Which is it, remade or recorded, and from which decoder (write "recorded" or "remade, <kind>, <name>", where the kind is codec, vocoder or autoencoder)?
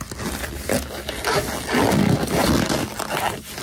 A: recorded